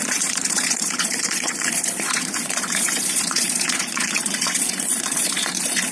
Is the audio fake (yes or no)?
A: yes